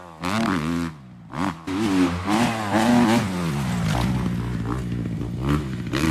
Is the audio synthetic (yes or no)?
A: no